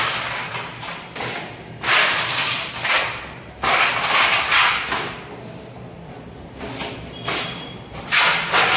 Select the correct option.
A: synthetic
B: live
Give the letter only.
B